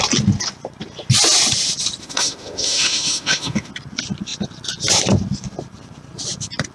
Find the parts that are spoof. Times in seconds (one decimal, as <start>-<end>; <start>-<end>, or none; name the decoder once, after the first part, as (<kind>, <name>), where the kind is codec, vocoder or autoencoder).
2.0-3.7 (autoencoder, DAC-VAE)